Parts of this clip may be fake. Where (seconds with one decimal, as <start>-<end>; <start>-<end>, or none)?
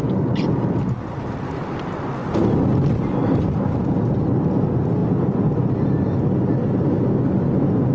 none